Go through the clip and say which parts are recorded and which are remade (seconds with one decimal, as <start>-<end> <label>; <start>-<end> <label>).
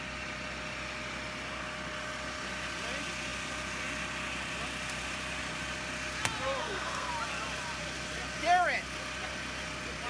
0.0-6.6 recorded; 6.6-7.1 remade; 7.1-10.1 recorded